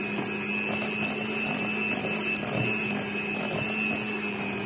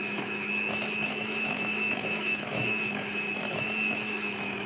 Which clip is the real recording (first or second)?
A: first